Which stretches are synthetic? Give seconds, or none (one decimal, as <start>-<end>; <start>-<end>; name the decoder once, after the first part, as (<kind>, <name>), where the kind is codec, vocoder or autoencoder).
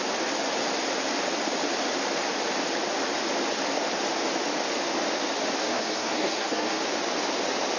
5.6-6.8 (codec, SNAC)